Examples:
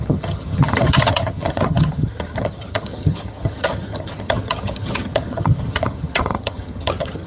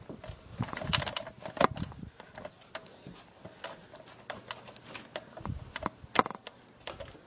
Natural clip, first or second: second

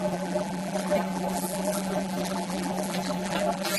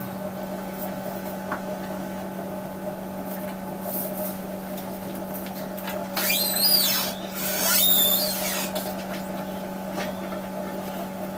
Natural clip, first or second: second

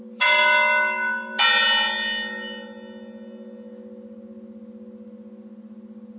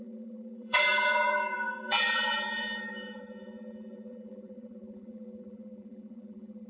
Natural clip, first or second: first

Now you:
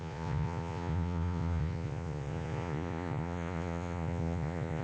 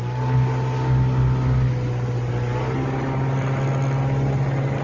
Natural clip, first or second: second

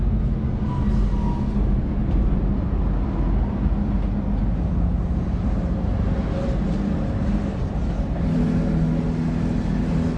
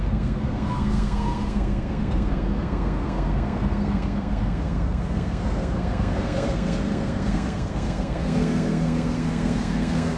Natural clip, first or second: first